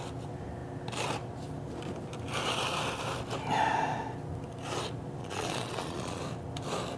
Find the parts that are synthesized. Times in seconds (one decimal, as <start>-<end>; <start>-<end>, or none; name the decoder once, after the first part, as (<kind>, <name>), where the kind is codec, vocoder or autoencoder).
5.2-6.2 (vocoder, Vocos)